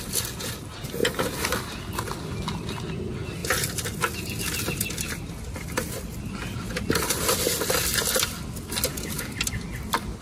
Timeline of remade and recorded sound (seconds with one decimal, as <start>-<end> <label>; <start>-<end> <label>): 0.0-10.2 recorded